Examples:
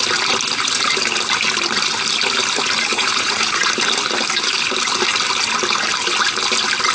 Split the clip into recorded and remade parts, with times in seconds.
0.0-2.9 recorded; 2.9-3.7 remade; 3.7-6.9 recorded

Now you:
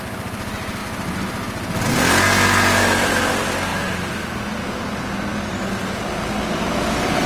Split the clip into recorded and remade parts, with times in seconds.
0.0-7.3 recorded

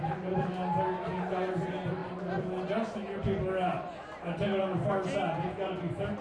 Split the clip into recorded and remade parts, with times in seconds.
0.0-6.2 recorded

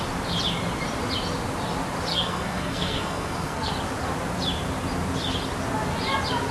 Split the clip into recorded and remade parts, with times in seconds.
0.0-2.1 recorded; 2.1-3.7 remade; 3.7-6.5 recorded

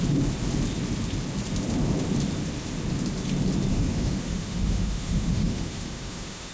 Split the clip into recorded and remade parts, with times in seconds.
0.0-3.7 recorded; 3.7-6.5 remade

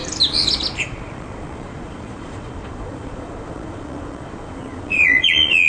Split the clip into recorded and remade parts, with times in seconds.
0.0-0.8 recorded; 0.8-5.7 remade

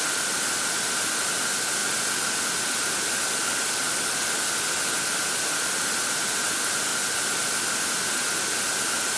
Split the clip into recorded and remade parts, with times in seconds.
0.0-9.2 remade